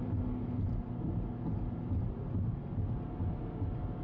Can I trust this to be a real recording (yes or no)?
yes